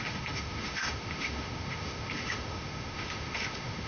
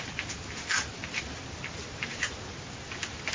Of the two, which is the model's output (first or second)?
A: first